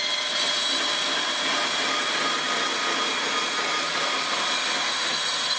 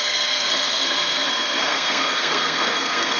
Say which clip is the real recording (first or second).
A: first